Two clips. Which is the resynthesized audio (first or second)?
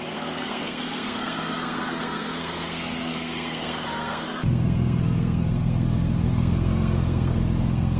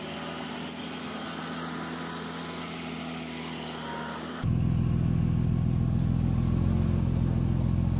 first